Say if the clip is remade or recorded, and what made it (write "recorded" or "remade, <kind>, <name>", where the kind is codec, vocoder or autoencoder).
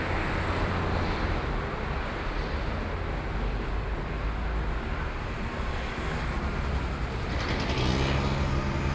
recorded